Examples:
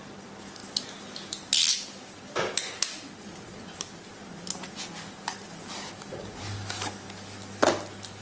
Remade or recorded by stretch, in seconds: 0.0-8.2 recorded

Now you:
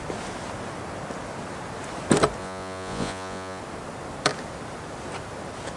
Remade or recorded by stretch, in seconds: 0.0-2.4 recorded; 2.4-3.6 remade; 3.6-5.8 recorded

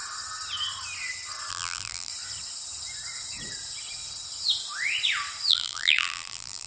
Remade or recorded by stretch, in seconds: 0.0-1.5 recorded; 1.5-2.1 remade; 2.1-5.5 recorded; 5.5-6.7 remade